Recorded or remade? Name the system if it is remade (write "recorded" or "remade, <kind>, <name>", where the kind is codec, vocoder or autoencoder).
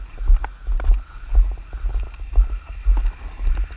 recorded